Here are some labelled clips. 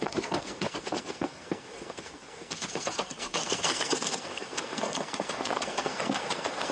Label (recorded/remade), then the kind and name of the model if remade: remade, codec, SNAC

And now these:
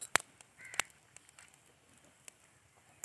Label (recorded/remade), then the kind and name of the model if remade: recorded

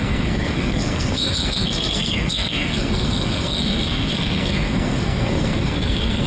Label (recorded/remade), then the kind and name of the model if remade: remade, codec, SNAC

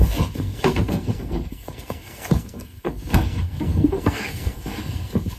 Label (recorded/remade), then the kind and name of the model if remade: remade, codec, SNAC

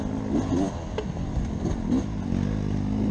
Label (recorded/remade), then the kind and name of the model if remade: recorded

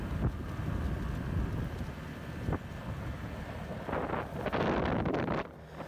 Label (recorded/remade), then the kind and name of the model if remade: recorded